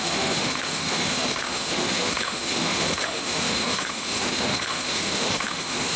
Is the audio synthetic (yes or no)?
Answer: yes